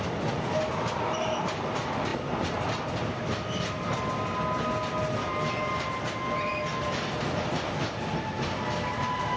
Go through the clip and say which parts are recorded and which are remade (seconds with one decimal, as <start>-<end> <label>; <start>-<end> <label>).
0.0-9.4 recorded